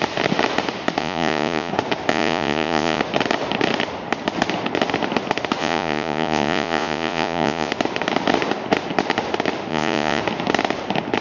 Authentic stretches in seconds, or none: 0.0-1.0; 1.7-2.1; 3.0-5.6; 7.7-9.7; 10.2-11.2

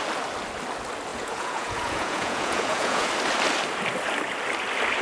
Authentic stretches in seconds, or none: 0.0-1.1; 3.1-5.0